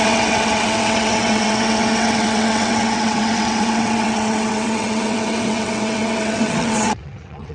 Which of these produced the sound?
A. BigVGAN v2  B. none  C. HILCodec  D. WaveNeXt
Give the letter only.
D